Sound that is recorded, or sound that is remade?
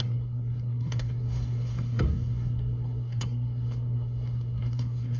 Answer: remade